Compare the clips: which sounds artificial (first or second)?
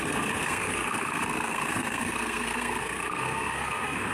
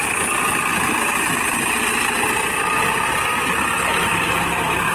first